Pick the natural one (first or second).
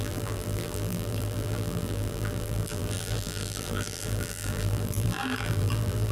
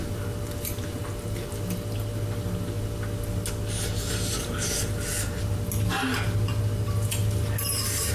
second